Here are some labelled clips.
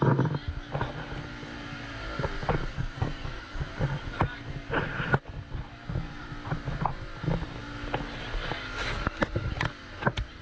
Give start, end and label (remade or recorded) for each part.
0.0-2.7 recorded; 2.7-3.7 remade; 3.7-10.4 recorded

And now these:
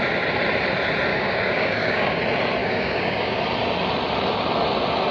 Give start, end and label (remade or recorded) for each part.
0.0-1.1 recorded; 1.1-2.2 remade; 2.2-2.6 recorded; 2.6-3.4 remade; 3.4-5.1 recorded